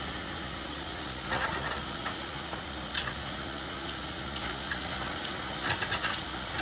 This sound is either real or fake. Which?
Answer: fake